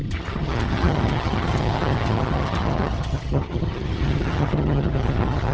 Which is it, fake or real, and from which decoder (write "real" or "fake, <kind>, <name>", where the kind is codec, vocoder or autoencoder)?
fake, vocoder, HiFi-GAN